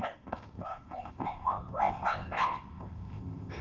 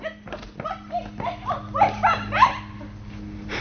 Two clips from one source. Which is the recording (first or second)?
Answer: second